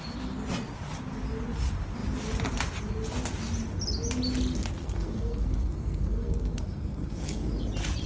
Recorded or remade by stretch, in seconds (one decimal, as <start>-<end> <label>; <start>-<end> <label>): 0.0-4.8 recorded; 4.8-7.5 remade; 7.5-8.1 recorded